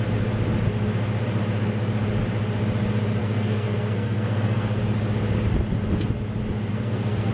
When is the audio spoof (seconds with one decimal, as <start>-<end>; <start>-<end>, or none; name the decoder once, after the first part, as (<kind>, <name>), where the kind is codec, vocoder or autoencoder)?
3.2-4.8 (codec, SNAC); 6.7-7.3